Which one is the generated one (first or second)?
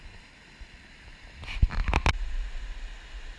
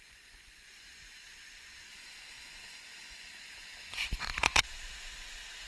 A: second